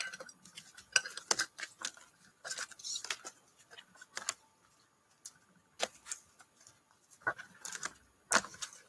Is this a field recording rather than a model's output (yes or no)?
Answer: yes